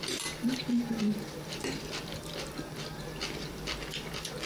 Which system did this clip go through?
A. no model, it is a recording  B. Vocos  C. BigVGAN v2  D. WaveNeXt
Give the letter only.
C